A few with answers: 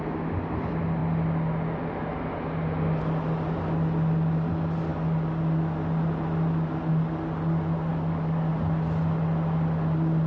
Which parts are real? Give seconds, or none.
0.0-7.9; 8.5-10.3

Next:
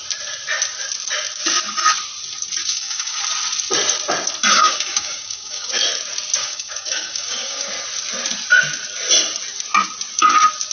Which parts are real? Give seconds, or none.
0.0-2.6; 3.2-4.5; 5.7-6.4; 7.7-10.7

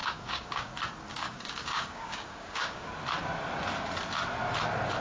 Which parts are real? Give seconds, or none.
0.7-1.1; 2.9-5.0

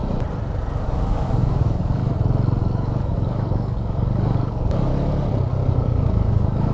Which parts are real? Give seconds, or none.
0.0-0.8; 2.0-2.6; 4.9-5.7